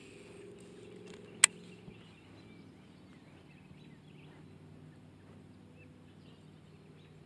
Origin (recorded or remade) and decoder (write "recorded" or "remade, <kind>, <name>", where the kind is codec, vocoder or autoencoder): recorded